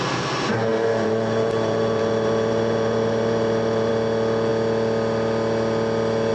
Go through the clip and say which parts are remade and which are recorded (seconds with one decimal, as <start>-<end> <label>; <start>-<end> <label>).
0.0-0.7 recorded; 0.7-3.9 remade; 3.9-6.3 recorded